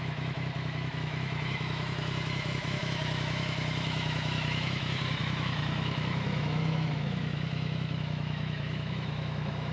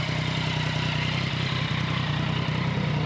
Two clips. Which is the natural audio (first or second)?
second